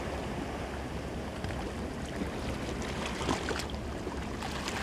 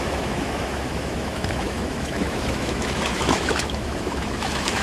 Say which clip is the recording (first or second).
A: first